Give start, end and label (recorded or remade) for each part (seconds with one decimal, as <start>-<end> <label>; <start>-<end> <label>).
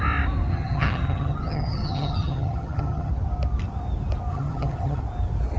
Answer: 0.0-0.5 recorded; 0.5-3.1 remade; 3.1-4.3 recorded; 4.3-5.0 remade; 5.0-5.6 recorded